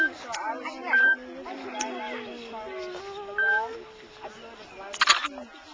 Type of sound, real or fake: real